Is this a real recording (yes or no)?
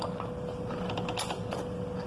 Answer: yes